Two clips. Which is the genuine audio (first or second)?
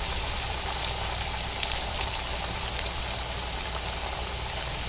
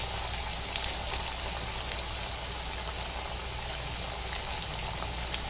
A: second